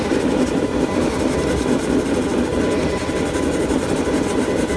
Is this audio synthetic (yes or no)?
no